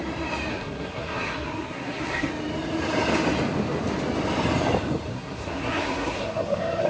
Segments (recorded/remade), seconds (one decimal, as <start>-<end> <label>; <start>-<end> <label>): 0.0-0.5 recorded; 0.5-2.3 remade; 2.3-5.1 recorded; 5.1-6.9 remade